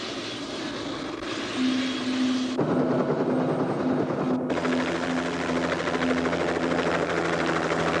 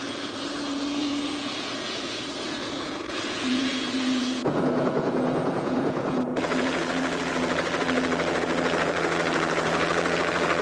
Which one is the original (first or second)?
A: first